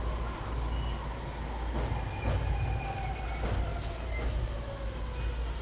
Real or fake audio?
real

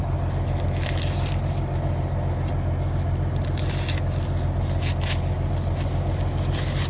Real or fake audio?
real